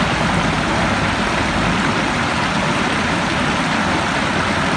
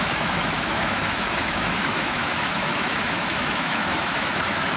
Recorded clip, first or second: first